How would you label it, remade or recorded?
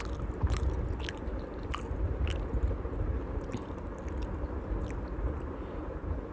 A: recorded